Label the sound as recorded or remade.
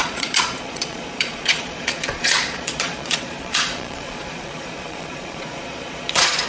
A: remade